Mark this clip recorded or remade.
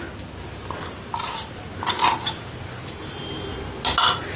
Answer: recorded